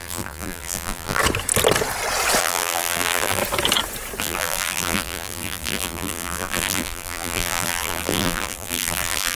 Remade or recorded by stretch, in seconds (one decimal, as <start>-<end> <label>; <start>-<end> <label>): 0.0-1.2 remade; 1.2-2.4 recorded; 2.4-3.4 remade; 3.4-4.2 recorded; 4.2-9.3 remade